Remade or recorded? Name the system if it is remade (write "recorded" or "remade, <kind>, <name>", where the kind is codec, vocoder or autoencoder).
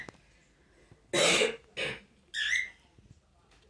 recorded